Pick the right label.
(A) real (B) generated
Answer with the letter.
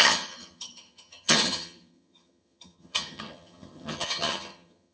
B